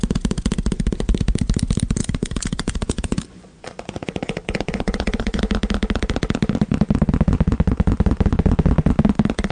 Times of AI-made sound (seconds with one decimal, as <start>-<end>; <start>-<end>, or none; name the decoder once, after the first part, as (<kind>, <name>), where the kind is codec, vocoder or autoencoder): 2.0-5.4 (vocoder, Vocos)